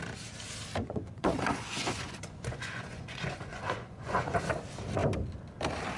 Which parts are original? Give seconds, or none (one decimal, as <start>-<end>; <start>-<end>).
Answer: 0.0-0.8; 4.4-6.0